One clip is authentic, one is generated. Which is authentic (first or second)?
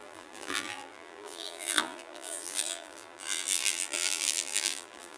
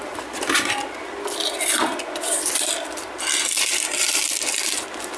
second